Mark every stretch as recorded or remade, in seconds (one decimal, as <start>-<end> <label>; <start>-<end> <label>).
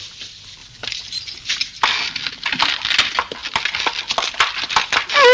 0.0-5.3 recorded